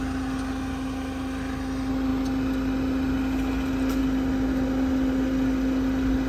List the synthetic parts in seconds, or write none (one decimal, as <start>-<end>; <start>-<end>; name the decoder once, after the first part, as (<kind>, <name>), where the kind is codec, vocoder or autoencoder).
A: none